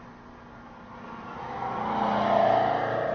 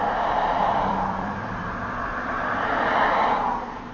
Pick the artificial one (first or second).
second